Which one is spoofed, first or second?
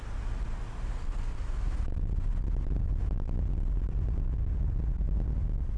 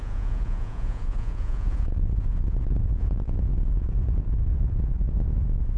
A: second